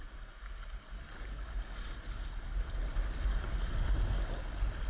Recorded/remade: recorded